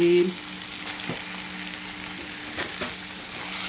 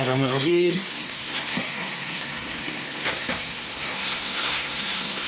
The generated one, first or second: second